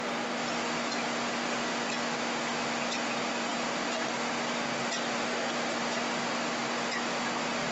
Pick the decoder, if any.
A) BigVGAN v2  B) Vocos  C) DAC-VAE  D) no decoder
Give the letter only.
D